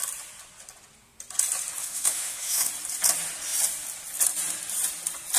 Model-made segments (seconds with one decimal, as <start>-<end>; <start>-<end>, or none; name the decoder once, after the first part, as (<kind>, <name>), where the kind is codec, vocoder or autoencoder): 1.8-2.7 (autoencoder, DAC-VAE)